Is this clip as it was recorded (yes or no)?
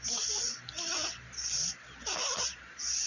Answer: yes